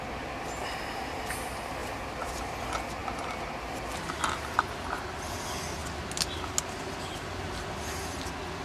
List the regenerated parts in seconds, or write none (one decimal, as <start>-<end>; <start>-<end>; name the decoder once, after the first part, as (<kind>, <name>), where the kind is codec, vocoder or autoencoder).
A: 1.8-2.5 (vocoder, BigVGAN v2)